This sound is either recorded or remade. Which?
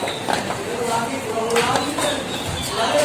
recorded